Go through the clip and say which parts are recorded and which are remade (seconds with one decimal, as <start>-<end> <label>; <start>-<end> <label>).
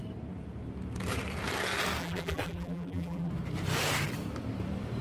0.0-2.0 recorded; 2.0-3.3 remade; 3.3-5.0 recorded